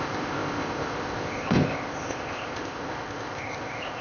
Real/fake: fake